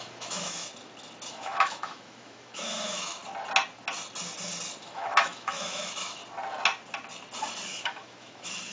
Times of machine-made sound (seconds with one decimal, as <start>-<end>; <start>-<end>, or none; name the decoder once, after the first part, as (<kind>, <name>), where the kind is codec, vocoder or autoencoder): 0.0-0.7 (autoencoder, DAC-VAE); 1.3-3.2; 4.8-6.2; 7.7-8.7